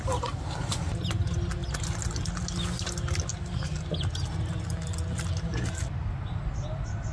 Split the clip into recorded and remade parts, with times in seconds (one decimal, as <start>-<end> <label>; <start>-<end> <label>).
0.0-7.1 recorded